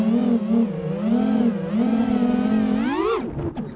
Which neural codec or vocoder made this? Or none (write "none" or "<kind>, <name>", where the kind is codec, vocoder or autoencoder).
none